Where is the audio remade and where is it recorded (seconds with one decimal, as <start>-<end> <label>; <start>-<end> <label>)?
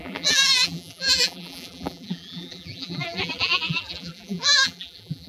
0.0-5.3 remade